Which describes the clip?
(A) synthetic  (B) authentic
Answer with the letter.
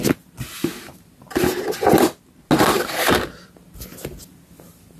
B